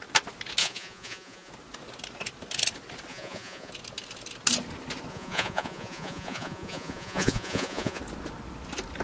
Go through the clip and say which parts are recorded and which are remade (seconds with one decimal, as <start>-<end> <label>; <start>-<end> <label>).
0.0-0.6 recorded; 0.6-1.5 remade; 1.5-3.1 recorded; 3.1-3.7 remade; 3.7-5.1 recorded; 5.1-8.0 remade; 8.0-9.0 recorded